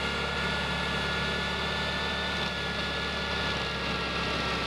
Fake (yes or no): no